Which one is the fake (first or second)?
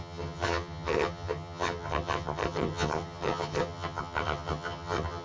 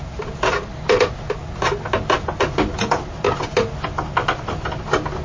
first